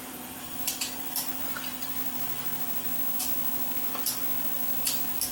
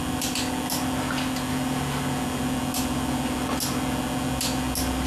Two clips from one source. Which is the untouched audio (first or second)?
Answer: second